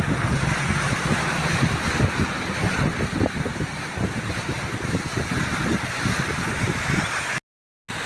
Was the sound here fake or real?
real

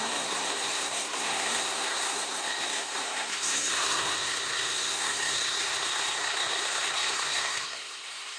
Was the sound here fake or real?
fake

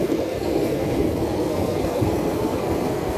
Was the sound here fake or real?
fake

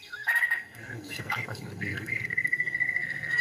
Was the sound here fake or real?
fake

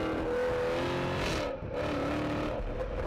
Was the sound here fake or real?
real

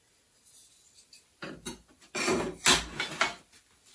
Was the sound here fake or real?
real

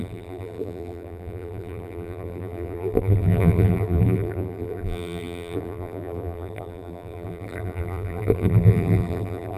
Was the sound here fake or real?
fake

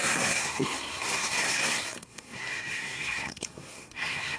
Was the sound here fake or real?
fake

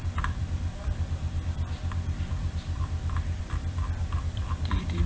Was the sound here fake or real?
fake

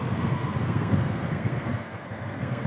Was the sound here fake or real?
fake